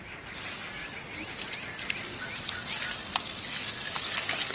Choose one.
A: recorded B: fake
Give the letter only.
A